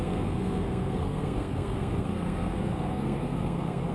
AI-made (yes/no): yes